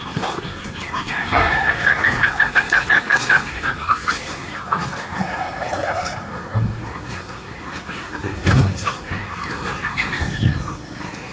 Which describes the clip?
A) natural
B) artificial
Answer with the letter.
B